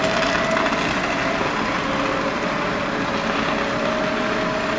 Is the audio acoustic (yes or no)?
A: yes